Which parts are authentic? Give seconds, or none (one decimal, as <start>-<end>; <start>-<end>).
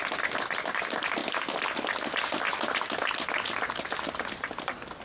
0.0-5.0